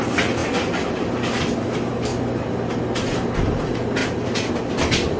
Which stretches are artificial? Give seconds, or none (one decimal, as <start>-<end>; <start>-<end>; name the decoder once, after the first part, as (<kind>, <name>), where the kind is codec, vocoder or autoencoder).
2.1-3.6 (vocoder, BigVGAN v2)